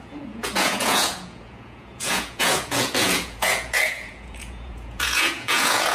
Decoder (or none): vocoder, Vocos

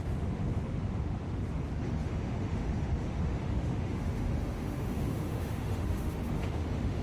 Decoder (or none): autoencoder, DAC-VAE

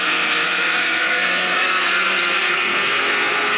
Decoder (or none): codec, SNAC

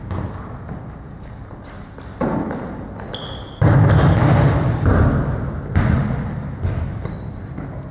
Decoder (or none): none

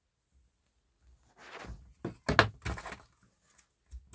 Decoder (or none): none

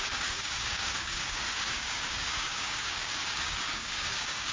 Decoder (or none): codec, DAC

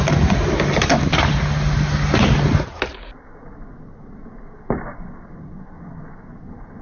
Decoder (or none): none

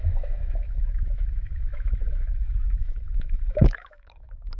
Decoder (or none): autoencoder, DAC-VAE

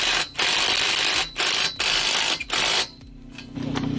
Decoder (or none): vocoder, BigVGAN v2